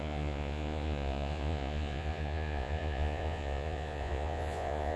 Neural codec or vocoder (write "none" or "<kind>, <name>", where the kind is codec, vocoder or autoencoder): vocoder, Vocos